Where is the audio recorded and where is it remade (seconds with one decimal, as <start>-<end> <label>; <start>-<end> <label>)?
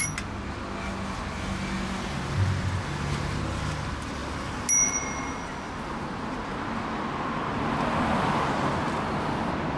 0.0-9.8 recorded